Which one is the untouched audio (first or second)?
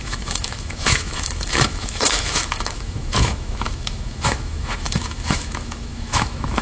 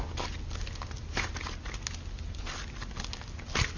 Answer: second